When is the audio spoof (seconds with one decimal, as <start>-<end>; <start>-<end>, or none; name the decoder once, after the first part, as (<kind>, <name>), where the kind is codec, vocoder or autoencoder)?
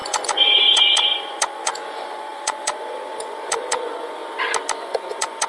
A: 0.0-4.2 (vocoder, Vocos); 4.8-5.5